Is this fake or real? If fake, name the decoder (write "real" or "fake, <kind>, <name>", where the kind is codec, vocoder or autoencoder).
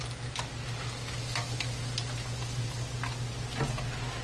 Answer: real